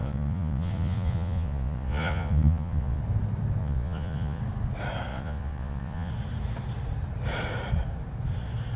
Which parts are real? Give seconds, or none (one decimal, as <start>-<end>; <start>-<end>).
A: 3.0-3.6; 4.4-5.1; 6.1-8.8